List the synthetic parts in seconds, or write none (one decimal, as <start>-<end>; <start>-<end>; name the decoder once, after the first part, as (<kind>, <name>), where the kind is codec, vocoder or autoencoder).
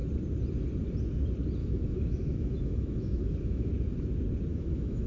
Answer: 1.6-3.7 (autoencoder, DAC-VAE); 4.5-5.1